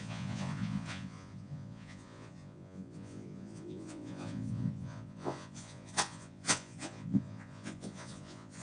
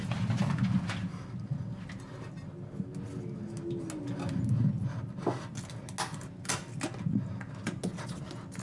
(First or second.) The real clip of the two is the second